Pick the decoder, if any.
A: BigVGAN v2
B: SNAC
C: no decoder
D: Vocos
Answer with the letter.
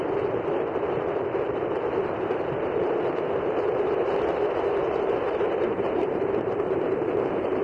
A